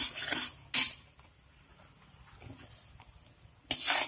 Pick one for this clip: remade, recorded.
recorded